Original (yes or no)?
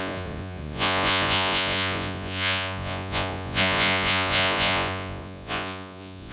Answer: no